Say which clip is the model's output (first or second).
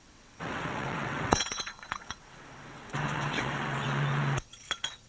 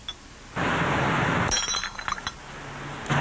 first